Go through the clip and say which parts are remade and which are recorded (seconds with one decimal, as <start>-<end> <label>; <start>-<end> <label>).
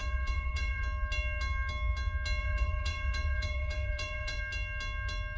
0.0-0.8 remade; 0.8-2.4 recorded; 2.4-4.4 remade; 4.4-5.4 recorded